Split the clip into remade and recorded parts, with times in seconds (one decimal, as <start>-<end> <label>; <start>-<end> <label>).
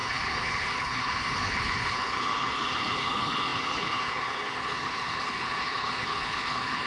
0.0-6.9 remade